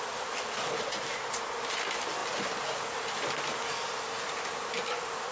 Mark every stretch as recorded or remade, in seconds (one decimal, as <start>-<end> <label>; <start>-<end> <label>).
0.0-5.3 recorded